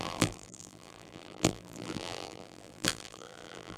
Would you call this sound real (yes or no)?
no